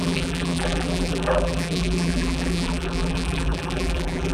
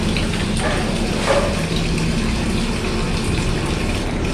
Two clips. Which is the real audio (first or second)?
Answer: second